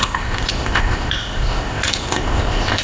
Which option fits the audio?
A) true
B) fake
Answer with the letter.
B